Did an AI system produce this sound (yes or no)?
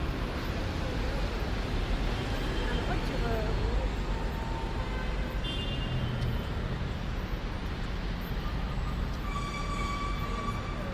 no